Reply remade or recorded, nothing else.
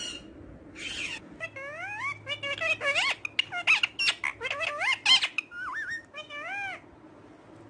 recorded